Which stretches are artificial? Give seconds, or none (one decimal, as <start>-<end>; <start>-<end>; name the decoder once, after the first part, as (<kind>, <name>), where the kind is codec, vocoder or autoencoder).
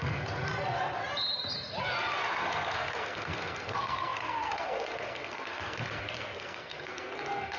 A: 0.0-0.5 (codec, SNAC); 2.3-7.6